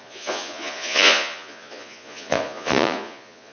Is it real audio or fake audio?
fake